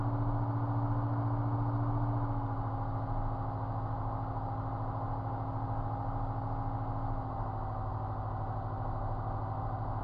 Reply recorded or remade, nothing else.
recorded